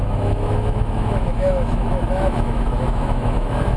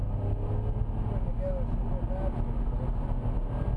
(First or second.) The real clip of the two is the second